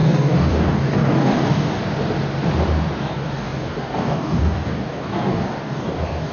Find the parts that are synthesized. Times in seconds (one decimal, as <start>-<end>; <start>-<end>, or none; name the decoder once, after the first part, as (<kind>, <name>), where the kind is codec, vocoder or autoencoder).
0.0-1.8 (codec, DAC); 3.0-6.3